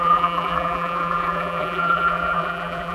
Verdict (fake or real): fake